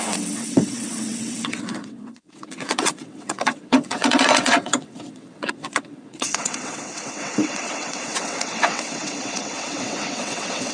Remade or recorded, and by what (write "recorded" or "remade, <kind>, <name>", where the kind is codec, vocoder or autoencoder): remade, vocoder, WaveNeXt